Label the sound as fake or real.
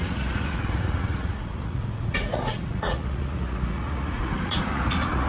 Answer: fake